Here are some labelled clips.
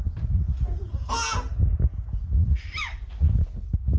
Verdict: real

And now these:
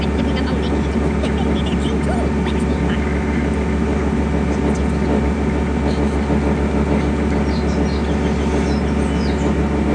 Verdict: real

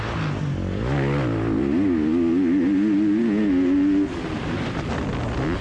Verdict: real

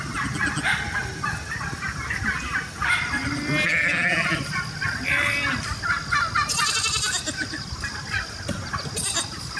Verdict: real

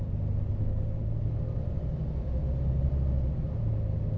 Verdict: real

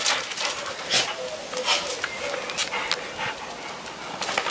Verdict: real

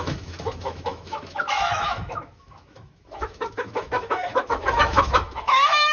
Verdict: fake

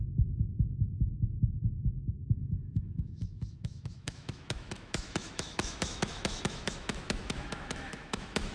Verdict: fake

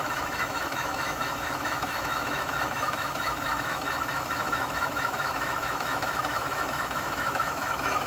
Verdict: fake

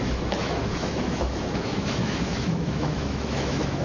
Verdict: fake